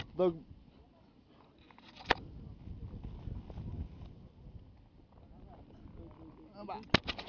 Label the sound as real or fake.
real